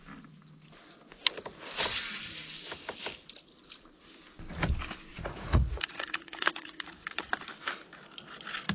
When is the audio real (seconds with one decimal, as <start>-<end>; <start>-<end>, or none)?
0.0-5.1; 7.3-8.7